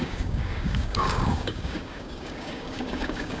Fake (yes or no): yes